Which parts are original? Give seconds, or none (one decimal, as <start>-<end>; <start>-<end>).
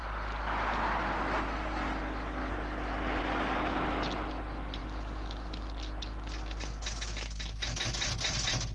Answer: 0.0-8.7